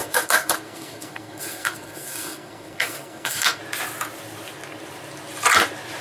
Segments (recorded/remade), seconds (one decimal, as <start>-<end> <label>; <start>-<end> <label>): 0.0-3.6 remade; 3.6-6.0 recorded